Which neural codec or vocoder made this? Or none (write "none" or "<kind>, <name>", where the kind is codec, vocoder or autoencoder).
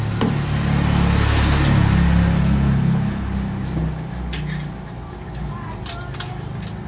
none